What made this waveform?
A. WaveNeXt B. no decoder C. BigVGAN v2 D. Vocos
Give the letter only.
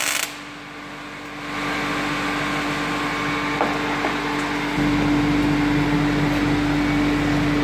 B